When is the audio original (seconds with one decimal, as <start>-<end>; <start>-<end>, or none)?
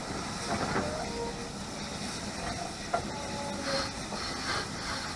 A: 0.0-5.2